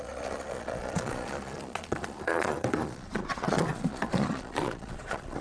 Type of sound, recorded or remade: remade